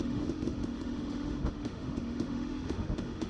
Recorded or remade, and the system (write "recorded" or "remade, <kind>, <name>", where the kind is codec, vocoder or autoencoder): remade, autoencoder, DAC-VAE